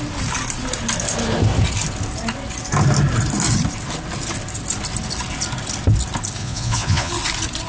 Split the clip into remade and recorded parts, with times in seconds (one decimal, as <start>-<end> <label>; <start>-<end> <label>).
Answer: 0.0-6.4 recorded; 6.4-7.1 remade; 7.1-7.7 recorded

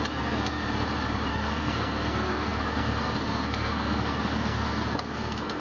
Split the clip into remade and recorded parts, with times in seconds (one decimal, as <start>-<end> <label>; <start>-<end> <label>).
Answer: 0.0-0.6 remade; 0.6-1.3 recorded; 1.3-5.6 remade

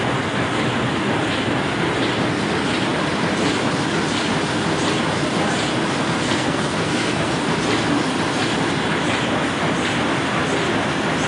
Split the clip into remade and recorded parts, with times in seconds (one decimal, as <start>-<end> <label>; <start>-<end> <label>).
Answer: 0.0-6.0 recorded; 6.0-7.3 remade; 7.3-11.3 recorded

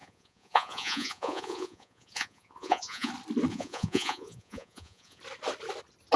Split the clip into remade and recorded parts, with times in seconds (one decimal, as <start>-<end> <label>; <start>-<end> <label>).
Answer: 0.0-3.1 remade; 3.1-3.5 recorded; 3.5-5.2 remade; 5.2-6.2 recorded

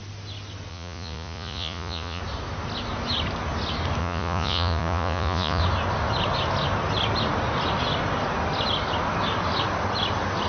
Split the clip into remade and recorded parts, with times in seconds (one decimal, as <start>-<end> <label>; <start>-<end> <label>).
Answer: 0.0-0.7 recorded; 0.7-2.2 remade; 2.2-4.0 recorded; 4.0-5.6 remade; 5.6-10.5 recorded

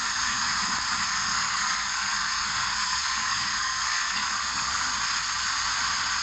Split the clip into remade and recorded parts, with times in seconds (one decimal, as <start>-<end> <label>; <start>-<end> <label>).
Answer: 0.0-0.5 remade; 0.5-1.0 recorded; 1.0-4.9 remade; 4.9-6.2 recorded

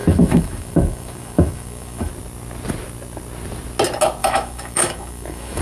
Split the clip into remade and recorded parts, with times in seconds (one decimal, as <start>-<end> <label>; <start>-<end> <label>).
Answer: 0.0-2.1 remade; 2.1-4.2 recorded; 4.2-5.6 remade